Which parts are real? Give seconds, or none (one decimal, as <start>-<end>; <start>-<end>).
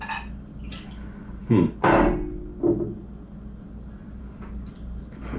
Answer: 0.0-5.4